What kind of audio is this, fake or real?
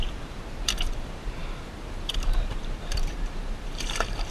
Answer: fake